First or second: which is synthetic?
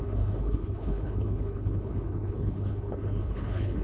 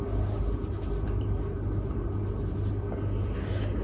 first